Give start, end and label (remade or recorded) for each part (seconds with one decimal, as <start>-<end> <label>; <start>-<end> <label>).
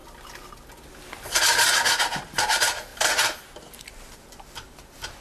0.0-2.0 recorded; 2.0-5.2 remade